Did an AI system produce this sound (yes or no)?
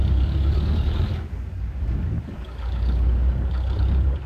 yes